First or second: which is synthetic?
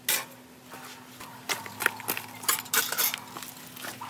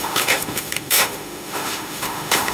second